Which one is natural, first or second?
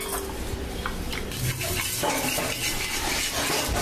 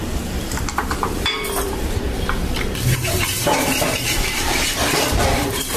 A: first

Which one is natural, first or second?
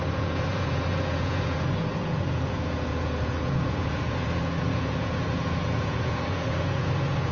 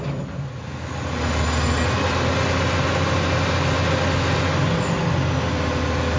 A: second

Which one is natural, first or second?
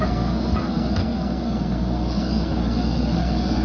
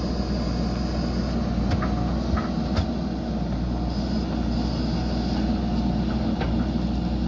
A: second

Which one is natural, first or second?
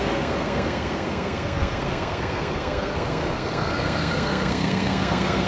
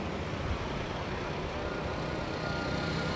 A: second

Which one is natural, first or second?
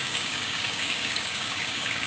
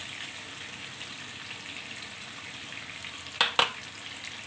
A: second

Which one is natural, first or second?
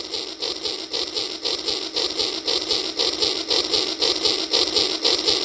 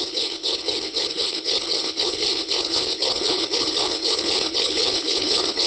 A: first